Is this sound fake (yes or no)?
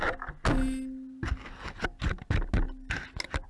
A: no